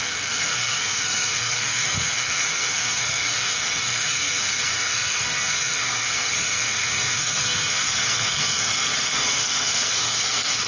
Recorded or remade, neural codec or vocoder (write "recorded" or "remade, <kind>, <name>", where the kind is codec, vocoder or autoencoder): remade, codec, SNAC